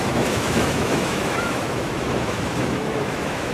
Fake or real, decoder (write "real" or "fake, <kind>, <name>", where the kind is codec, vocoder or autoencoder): fake, autoencoder, DAC-VAE